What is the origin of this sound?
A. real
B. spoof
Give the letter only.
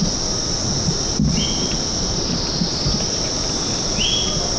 A